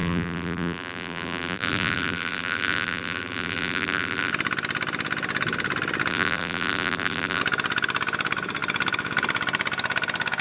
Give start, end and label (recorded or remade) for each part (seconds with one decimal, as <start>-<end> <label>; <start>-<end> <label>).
0.0-4.3 remade; 4.3-6.1 recorded; 6.1-7.4 remade; 7.4-10.4 recorded